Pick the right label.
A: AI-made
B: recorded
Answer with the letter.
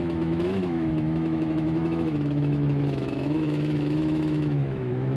A